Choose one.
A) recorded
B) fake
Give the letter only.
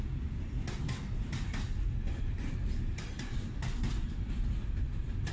A